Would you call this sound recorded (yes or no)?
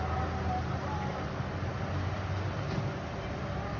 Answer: yes